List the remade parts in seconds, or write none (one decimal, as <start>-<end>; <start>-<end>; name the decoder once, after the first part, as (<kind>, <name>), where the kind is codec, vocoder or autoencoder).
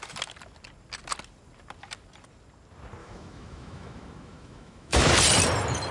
3.0-5.1 (autoencoder, DAC-VAE)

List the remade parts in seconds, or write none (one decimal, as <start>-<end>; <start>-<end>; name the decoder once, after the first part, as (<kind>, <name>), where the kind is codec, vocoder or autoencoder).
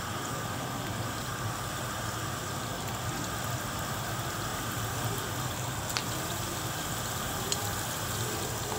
4.5-6.9 (vocoder, BigVGAN v2)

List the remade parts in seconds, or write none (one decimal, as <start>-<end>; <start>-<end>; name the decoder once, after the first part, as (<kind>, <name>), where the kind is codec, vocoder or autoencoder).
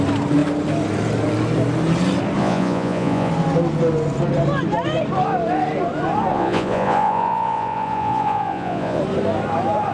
2.4-3.3 (vocoder, Vocos); 6.3-9.0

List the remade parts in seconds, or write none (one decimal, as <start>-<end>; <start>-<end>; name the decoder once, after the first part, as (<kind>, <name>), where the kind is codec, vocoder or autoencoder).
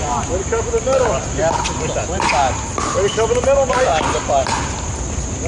none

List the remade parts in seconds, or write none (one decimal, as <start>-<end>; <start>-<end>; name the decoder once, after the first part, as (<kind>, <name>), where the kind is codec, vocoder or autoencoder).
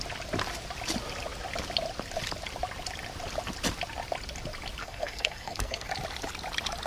4.8-5.9 (codec, SNAC)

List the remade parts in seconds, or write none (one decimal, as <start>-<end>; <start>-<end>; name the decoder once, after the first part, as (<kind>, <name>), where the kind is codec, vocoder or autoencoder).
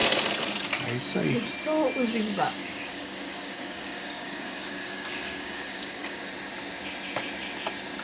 2.6-6.3 (codec, DAC)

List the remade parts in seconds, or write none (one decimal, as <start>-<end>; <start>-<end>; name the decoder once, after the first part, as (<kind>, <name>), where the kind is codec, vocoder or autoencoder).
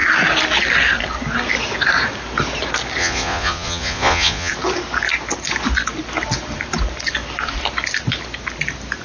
3.0-4.5 (vocoder, Vocos)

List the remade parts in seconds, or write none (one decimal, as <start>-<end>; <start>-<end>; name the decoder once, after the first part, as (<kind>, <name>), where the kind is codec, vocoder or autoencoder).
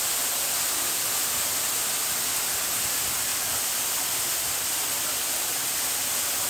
none